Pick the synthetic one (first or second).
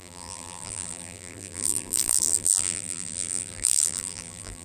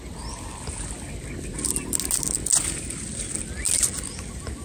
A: first